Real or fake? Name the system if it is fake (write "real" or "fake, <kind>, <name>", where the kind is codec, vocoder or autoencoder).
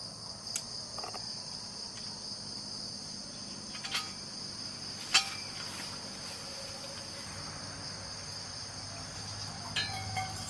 real